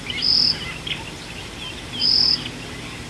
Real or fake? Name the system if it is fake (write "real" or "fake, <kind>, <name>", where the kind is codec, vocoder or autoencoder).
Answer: real